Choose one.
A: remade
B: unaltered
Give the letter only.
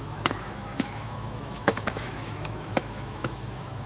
A